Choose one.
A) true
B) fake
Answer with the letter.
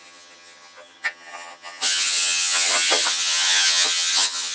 B